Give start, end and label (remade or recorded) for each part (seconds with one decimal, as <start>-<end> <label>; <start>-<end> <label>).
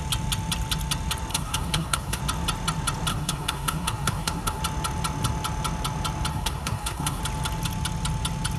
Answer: 0.0-1.3 recorded; 1.3-2.2 remade; 2.2-3.1 recorded; 3.1-4.6 remade; 4.6-6.3 recorded; 6.3-7.2 remade; 7.2-8.6 recorded